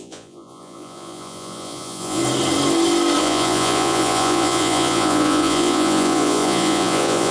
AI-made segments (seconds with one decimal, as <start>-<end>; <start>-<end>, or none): 0.0-2.2; 3.2-7.3